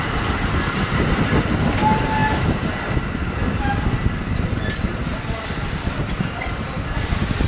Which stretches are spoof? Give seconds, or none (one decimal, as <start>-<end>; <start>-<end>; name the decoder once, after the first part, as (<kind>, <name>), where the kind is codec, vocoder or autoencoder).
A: none